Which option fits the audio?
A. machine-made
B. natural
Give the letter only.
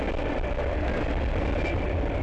B